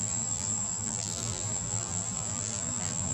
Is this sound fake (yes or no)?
yes